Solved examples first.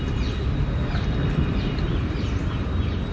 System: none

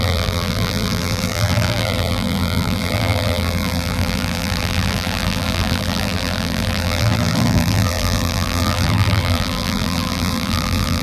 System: vocoder, BigVGAN v2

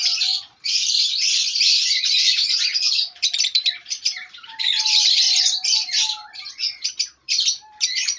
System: vocoder, BigVGAN v2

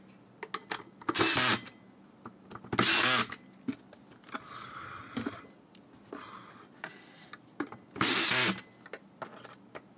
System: none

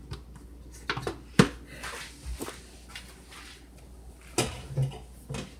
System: none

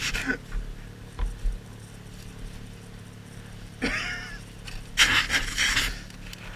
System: none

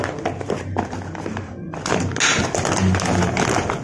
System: none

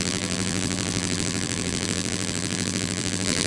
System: vocoder, BigVGAN v2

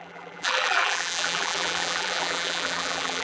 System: vocoder, BigVGAN v2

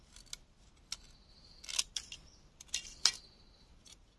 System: none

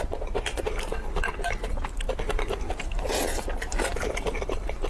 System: vocoder, BigVGAN v2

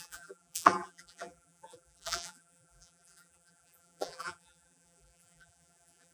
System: vocoder, BigVGAN v2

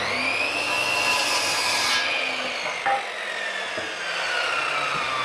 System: none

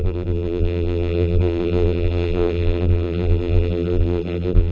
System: vocoder, BigVGAN v2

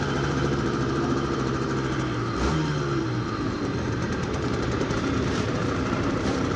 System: vocoder, BigVGAN v2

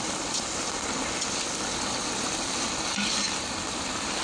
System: none